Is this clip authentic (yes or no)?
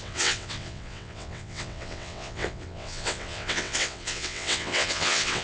no